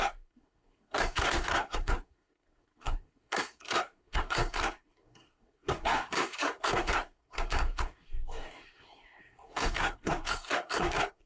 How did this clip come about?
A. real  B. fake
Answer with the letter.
B